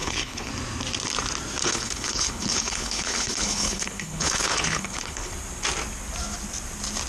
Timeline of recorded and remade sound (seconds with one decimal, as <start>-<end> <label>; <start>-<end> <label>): 0.0-0.5 remade; 0.5-1.6 recorded; 1.6-5.3 remade; 5.3-7.1 recorded